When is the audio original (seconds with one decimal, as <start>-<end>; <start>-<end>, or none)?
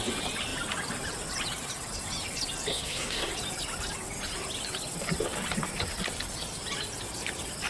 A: 0.0-2.7; 3.3-7.7